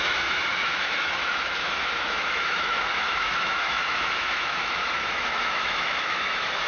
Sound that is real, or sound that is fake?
fake